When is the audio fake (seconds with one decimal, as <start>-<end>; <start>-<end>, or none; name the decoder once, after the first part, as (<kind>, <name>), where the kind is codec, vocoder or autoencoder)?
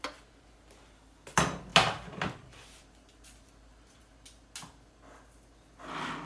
none